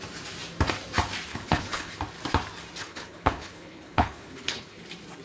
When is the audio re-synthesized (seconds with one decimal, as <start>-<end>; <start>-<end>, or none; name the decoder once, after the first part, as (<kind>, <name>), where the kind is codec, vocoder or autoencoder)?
1.3-2.0 (codec, HILCodec); 2.8-4.8